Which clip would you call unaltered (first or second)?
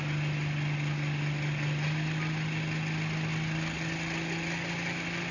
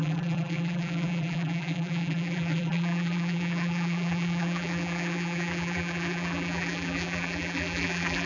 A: first